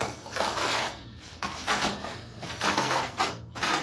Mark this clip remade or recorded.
remade